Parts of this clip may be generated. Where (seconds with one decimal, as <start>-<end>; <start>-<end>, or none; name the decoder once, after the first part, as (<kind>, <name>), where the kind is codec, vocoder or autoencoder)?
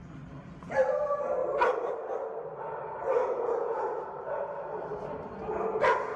3.2-3.8 (vocoder, Vocos)